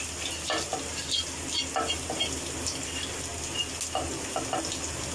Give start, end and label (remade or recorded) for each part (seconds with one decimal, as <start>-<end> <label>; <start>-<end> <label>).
0.0-5.1 recorded